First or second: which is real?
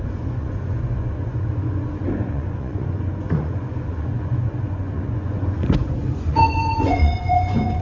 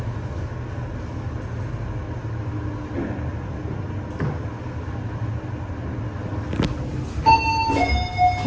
second